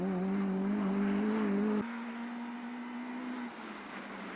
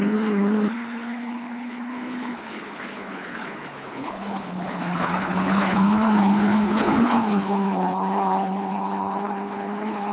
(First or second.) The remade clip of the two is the second